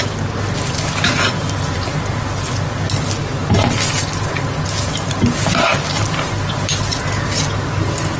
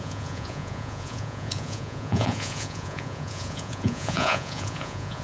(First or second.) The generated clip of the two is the second